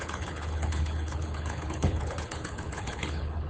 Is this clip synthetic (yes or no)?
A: yes